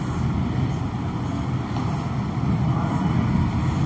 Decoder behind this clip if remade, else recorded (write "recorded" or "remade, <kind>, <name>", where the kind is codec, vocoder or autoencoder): recorded